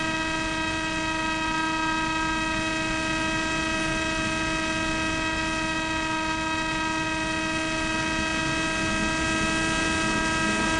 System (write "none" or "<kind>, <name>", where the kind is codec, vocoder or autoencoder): none